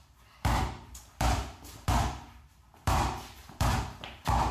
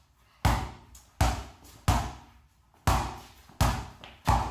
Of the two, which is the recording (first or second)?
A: second